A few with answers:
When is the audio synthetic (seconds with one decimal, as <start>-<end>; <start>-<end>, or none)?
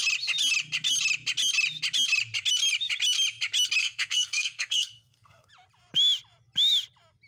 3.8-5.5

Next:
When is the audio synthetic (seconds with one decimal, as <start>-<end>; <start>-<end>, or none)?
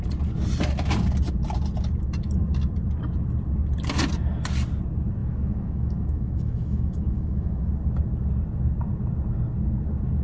5.2-7.7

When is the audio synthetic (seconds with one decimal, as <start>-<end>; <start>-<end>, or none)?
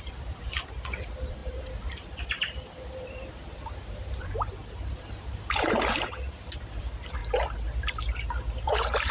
0.0-7.2; 8.0-9.1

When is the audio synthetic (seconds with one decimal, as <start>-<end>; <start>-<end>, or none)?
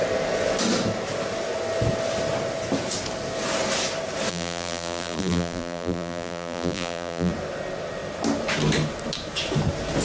4.3-7.3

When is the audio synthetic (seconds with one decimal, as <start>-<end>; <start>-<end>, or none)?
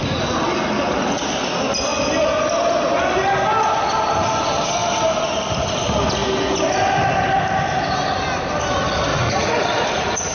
9.1-10.3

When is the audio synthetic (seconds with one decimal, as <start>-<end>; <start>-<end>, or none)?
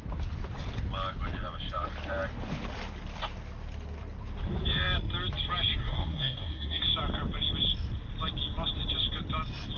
5.8-6.8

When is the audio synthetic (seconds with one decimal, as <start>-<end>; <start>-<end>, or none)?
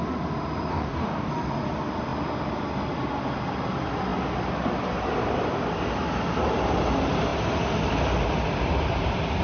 0.7-1.3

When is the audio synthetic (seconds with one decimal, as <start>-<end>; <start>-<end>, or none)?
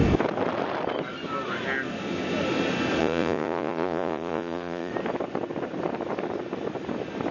3.0-4.9